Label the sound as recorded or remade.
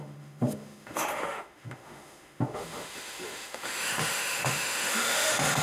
remade